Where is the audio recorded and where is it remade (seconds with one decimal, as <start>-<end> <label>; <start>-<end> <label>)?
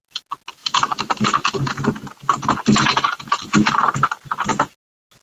0.0-5.2 recorded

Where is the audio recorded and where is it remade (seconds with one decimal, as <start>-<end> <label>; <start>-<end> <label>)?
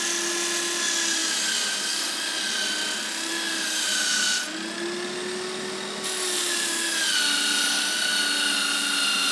0.0-9.3 recorded